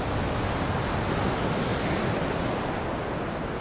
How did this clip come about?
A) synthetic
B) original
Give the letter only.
B